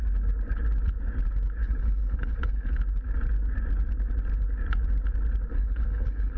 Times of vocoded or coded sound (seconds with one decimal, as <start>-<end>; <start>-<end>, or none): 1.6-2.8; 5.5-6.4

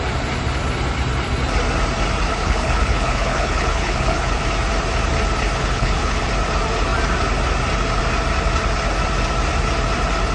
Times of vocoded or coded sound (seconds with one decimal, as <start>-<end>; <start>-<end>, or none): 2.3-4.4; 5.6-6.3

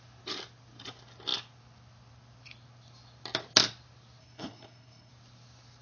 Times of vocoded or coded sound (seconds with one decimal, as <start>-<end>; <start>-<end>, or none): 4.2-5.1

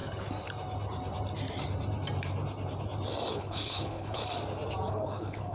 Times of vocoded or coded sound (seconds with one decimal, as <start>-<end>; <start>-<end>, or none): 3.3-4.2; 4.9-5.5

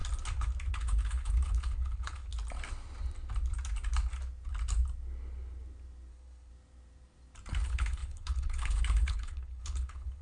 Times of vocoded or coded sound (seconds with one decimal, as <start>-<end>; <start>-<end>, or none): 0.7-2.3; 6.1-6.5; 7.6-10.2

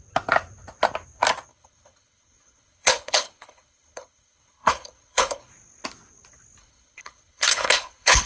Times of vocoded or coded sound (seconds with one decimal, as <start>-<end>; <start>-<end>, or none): 1.5-5.5; 6.6-8.3

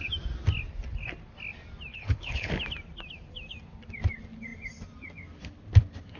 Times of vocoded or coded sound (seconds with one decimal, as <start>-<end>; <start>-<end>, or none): 1.9-2.5